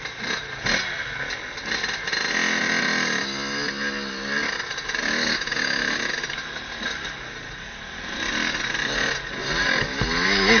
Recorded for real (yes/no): yes